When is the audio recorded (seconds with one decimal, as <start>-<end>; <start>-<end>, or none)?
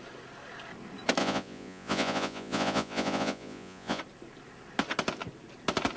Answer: 0.0-1.2; 4.0-6.0